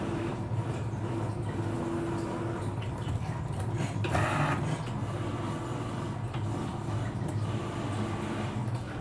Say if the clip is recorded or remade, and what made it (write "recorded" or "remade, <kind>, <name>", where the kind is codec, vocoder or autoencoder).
recorded